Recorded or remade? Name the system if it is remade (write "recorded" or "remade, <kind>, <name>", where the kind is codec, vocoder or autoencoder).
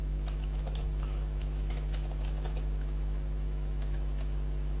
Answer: remade, autoencoder, DAC-VAE